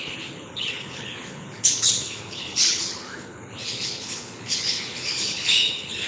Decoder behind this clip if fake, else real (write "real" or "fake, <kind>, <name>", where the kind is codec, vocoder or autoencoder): fake, codec, HILCodec